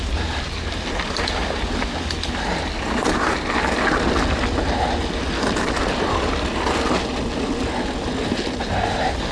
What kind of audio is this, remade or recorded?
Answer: recorded